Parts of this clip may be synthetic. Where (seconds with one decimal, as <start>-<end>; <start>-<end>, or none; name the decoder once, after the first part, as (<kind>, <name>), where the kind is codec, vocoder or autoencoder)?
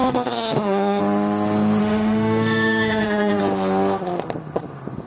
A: 0.0-1.0 (autoencoder, DAC-VAE); 1.8-3.4